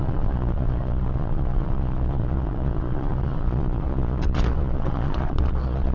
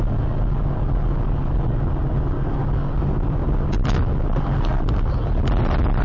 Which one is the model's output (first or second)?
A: first